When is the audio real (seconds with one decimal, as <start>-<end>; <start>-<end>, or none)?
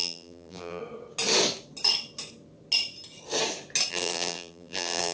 0.8-3.9